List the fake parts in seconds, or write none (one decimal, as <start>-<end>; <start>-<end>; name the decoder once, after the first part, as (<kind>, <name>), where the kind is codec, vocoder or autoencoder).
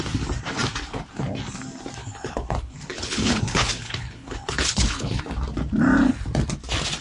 2.0-5.2 (codec, HILCodec)